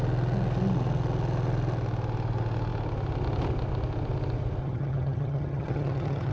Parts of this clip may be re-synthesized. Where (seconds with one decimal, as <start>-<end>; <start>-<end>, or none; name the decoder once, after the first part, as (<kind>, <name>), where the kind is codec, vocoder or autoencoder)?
4.6-6.3 (vocoder, HiFi-GAN)